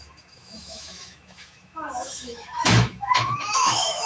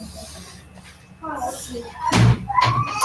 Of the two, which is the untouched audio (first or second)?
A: second